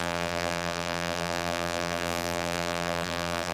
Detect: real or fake fake